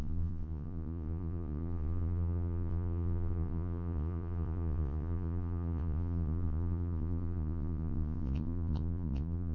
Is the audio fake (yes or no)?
yes